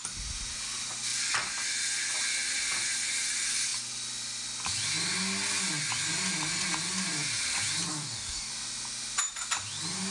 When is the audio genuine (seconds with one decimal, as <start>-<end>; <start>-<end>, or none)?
0.0-7.9; 8.5-10.1